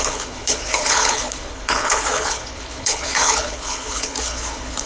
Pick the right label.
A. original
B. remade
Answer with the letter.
B